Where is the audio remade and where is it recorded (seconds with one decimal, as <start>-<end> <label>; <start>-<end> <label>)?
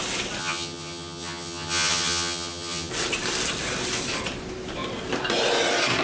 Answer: 0.0-0.4 recorded; 0.4-2.9 remade; 2.9-6.0 recorded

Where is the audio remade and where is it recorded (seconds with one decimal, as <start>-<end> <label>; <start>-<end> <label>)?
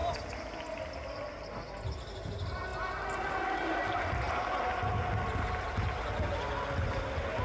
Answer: 0.0-7.4 recorded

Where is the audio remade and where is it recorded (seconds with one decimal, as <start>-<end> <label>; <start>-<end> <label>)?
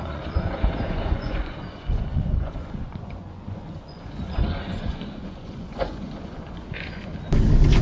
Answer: 0.0-7.1 remade; 7.1-7.8 recorded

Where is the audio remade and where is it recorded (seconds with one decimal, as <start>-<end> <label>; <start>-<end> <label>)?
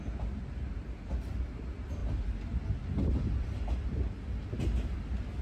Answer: 0.0-5.4 recorded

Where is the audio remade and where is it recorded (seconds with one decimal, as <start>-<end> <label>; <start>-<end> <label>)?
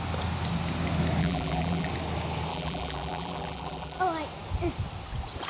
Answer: 0.0-1.2 recorded; 1.2-1.9 remade; 1.9-2.5 recorded; 2.5-4.0 remade; 4.0-5.5 recorded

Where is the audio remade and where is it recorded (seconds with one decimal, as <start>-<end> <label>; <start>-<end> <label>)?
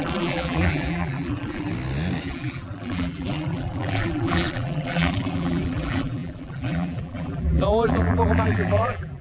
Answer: 0.0-1.7 remade; 1.7-2.2 recorded; 2.2-9.2 remade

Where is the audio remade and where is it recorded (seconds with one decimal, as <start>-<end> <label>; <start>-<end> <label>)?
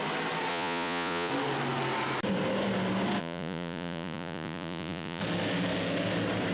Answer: 0.0-0.5 recorded; 0.5-1.3 remade; 1.3-3.2 recorded; 3.2-5.2 remade; 5.2-6.5 recorded